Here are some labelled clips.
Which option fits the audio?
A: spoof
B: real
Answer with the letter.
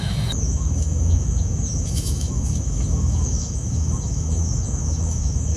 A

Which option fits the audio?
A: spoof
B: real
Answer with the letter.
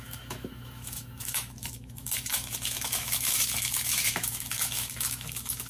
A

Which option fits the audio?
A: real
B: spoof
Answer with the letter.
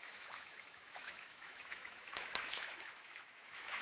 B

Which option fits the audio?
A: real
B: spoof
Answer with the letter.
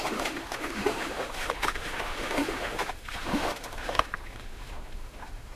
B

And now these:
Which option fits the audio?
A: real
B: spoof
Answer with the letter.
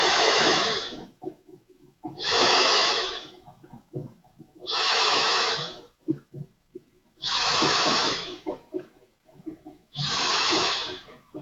B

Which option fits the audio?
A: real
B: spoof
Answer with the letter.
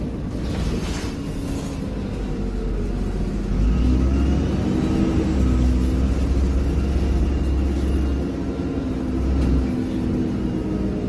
A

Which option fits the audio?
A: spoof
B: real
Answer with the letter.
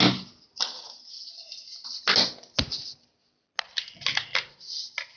B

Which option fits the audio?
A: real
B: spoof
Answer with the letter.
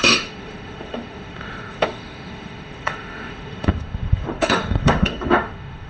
B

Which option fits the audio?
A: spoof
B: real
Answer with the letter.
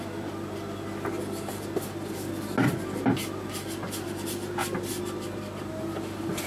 B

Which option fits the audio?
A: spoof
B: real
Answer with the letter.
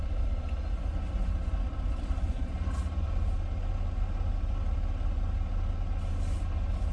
B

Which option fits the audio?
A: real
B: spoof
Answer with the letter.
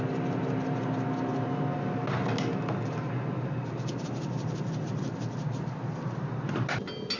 A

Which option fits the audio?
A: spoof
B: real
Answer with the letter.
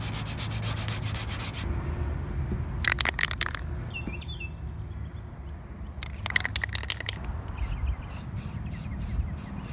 B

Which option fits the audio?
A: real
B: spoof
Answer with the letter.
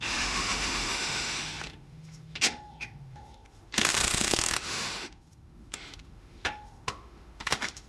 B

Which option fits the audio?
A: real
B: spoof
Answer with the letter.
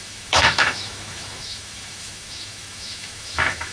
B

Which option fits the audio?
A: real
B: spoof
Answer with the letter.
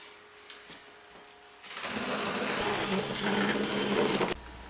A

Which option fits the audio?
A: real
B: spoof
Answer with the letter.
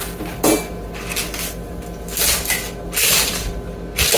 A